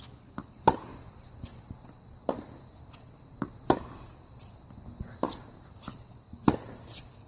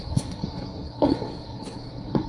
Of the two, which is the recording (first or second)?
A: first